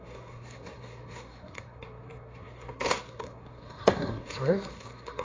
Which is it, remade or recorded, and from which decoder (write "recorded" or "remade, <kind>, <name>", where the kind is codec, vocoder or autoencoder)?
remade, codec, SNAC